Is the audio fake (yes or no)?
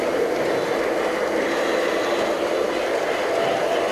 no